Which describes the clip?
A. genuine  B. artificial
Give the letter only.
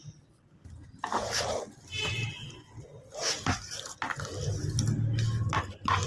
A